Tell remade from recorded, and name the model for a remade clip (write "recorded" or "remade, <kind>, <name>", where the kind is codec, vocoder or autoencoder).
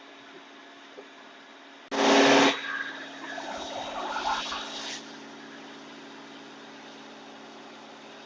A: recorded